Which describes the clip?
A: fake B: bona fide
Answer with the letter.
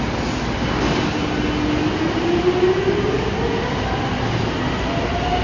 B